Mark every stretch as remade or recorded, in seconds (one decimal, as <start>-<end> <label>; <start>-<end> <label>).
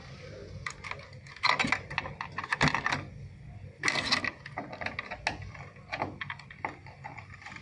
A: 0.0-7.6 recorded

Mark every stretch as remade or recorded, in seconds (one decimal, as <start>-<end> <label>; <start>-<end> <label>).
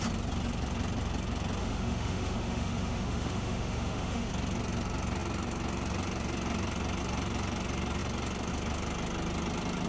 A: 0.0-1.6 recorded; 1.6-4.3 remade; 4.3-9.9 recorded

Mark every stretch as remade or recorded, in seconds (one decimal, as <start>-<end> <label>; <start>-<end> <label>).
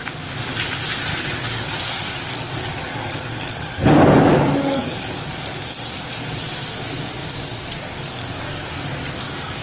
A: 0.0-1.1 recorded; 1.1-6.0 remade; 6.0-7.2 recorded; 7.2-8.7 remade; 8.7-9.6 recorded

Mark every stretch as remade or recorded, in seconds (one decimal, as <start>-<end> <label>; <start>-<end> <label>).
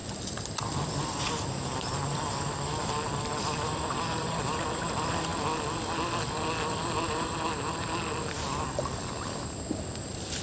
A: 0.0-0.6 recorded; 0.6-5.3 remade; 5.3-9.9 recorded; 9.9-10.4 remade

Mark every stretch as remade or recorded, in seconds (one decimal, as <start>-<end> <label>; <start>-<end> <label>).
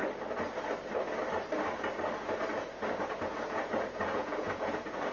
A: 0.0-3.1 recorded; 3.1-5.1 remade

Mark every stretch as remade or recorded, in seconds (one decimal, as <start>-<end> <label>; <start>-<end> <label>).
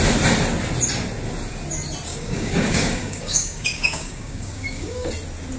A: 0.0-2.1 recorded; 2.1-5.1 remade; 5.1-5.6 recorded